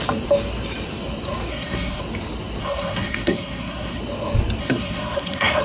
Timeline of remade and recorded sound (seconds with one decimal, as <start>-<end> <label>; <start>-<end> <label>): 0.0-1.5 recorded; 1.5-2.0 remade; 2.0-2.6 recorded; 2.6-4.0 remade; 4.0-4.6 recorded; 4.6-5.6 remade